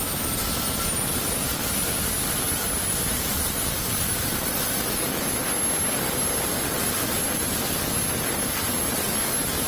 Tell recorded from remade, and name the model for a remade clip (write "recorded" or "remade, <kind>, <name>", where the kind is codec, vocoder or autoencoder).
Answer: recorded